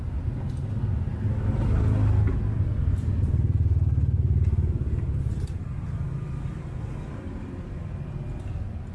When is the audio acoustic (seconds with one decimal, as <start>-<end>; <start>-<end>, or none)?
0.0-8.9